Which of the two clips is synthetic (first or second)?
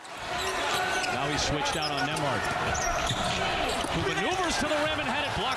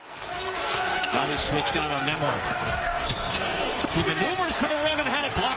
second